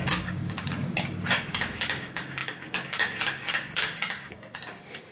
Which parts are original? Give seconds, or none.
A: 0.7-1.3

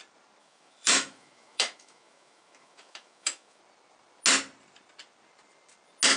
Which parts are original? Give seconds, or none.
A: 0.0-0.4; 3.6-6.2

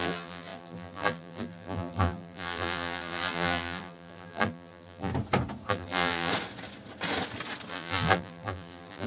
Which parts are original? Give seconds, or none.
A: 5.1-5.7; 6.3-7.7

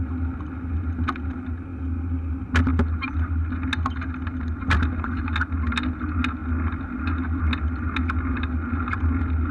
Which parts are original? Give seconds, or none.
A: 0.0-9.5